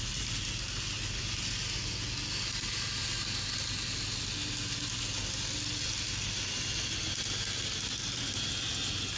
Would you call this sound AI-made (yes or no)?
no